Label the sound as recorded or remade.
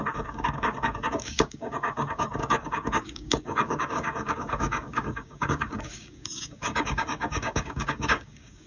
remade